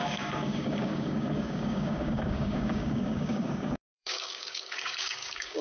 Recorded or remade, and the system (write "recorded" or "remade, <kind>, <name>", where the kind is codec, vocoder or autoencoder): remade, codec, DAC